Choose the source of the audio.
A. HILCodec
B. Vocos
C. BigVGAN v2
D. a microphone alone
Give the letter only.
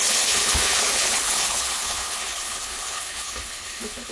A